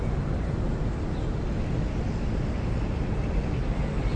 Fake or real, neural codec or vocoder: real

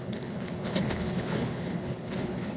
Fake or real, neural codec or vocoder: fake, codec, HILCodec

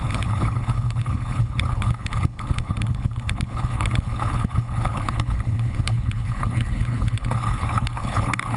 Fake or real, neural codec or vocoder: fake, codec, HILCodec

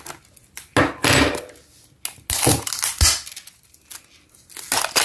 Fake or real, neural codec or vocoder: real